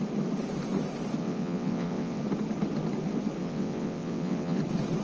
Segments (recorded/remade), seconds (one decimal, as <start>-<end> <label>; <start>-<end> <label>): 0.0-1.2 recorded; 1.2-2.2 remade; 2.2-3.4 recorded; 3.4-4.6 remade; 4.6-5.0 recorded